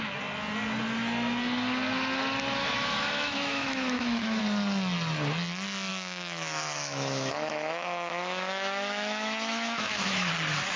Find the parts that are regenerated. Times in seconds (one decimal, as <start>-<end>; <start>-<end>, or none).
2.6-4.4; 5.9-10.3